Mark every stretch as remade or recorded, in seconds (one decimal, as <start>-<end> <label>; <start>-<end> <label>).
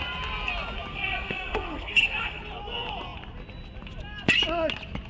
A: 0.0-0.9 recorded; 0.9-2.4 remade; 2.4-5.1 recorded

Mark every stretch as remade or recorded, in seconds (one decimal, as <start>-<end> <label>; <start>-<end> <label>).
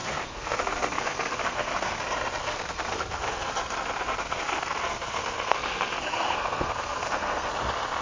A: 0.0-2.0 remade; 2.0-2.4 recorded; 2.4-3.5 remade; 3.5-4.2 recorded; 4.2-7.5 remade; 7.5-8.0 recorded